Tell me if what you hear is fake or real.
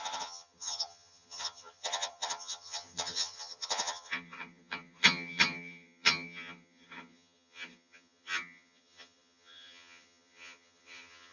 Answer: fake